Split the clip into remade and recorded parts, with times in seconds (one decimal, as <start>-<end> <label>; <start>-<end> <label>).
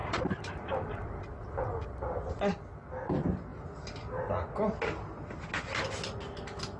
0.0-1.1 remade; 1.1-6.8 recorded